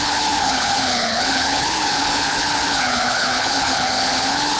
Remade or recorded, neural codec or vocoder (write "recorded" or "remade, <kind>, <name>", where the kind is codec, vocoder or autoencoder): remade, codec, HILCodec